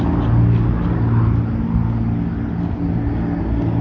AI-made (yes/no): no